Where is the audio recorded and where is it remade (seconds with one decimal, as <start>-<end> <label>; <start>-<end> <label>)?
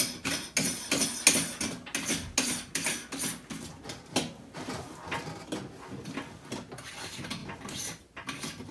0.0-8.7 recorded